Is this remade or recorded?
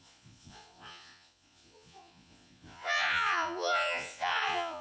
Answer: remade